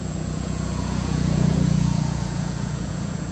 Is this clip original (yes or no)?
no